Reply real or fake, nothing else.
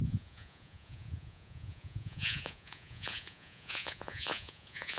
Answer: fake